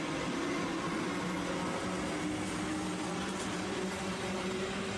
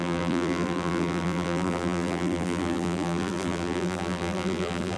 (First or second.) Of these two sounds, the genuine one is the first